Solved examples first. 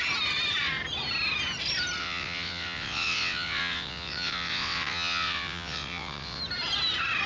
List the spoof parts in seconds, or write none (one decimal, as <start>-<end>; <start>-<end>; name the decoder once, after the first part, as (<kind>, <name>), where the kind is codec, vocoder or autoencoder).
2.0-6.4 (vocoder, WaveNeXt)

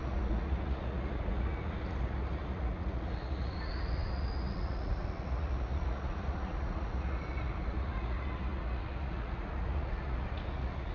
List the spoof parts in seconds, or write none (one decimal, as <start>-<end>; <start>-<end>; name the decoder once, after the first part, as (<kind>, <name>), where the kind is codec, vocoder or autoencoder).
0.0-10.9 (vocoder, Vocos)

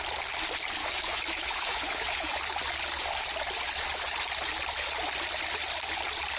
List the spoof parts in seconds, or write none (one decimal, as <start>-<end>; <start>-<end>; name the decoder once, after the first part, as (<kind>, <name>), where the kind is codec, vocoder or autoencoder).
0.8-2.4 (autoencoder, DAC-VAE)

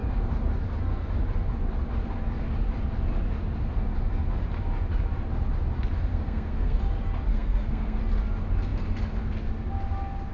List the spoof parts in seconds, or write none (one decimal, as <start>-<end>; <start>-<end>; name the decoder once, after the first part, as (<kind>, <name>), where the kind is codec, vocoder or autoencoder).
6.1-6.8 (codec, SNAC); 7.3-8.0